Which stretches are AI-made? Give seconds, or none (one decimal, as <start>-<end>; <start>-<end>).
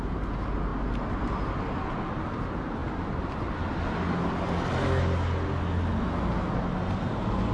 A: none